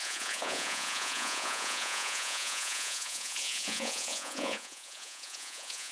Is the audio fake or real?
fake